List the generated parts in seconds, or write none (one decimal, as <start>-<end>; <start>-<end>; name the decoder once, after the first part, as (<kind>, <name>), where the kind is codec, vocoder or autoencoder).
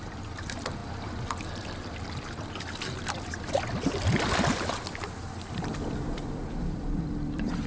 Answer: 0.0-0.8 (vocoder, BigVGAN v2); 3.0-7.7